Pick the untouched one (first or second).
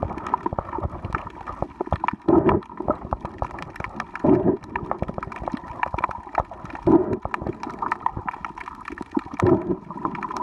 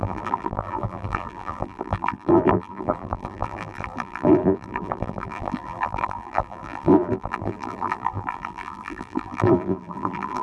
first